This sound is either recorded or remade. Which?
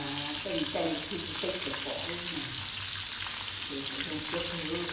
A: recorded